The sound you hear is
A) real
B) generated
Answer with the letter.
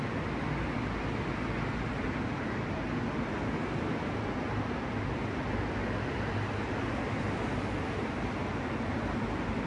A